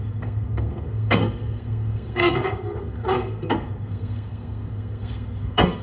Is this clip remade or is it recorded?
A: remade